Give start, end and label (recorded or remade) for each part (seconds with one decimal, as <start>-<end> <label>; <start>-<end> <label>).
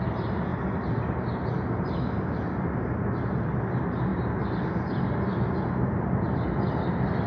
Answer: 0.0-0.5 remade; 0.5-2.2 recorded; 2.2-4.1 remade; 4.1-5.9 recorded; 5.9-7.3 remade